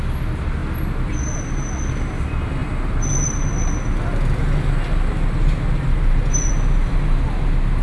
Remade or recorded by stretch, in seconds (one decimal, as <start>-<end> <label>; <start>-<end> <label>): 0.0-7.8 recorded